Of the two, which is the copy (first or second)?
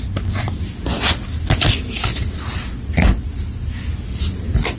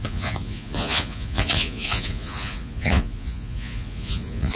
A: second